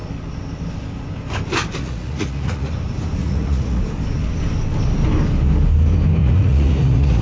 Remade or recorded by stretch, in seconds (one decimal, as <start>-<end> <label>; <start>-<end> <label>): 0.0-1.8 recorded; 1.8-2.7 remade; 2.7-3.2 recorded; 3.2-3.8 remade; 3.8-6.2 recorded; 6.2-7.2 remade